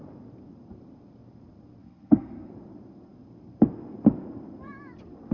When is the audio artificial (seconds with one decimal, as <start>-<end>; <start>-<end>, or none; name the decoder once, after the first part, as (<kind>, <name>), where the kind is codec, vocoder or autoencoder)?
1.8-2.5 (codec, SNAC)